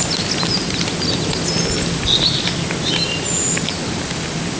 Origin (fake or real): real